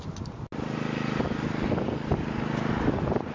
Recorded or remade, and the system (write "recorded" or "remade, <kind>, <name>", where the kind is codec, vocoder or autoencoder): recorded